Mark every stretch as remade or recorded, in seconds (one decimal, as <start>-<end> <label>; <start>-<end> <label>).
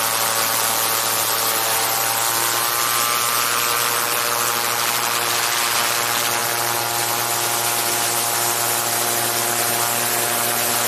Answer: 0.0-10.9 recorded